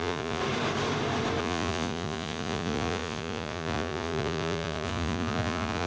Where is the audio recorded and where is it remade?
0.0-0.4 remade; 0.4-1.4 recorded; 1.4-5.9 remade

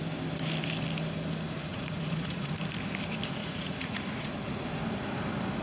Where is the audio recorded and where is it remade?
0.0-1.7 recorded; 1.7-2.5 remade; 2.5-3.4 recorded; 3.4-4.3 remade; 4.3-5.6 recorded

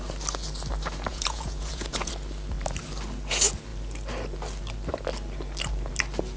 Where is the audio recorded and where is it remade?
0.0-1.1 recorded; 1.1-2.1 remade; 2.1-6.4 recorded

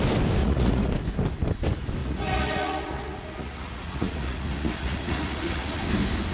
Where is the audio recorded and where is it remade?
0.0-0.4 recorded; 0.4-0.9 remade; 0.9-2.0 recorded; 2.0-5.8 remade; 5.8-6.3 recorded

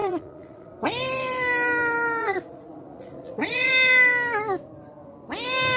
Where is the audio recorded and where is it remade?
0.0-0.7 remade; 0.7-2.2 recorded; 2.2-3.7 remade; 3.7-5.8 recorded

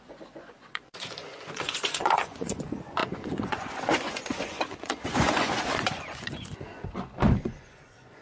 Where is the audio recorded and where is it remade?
0.0-6.8 remade; 6.8-7.4 recorded; 7.4-8.2 remade